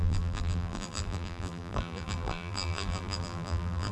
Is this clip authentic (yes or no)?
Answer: no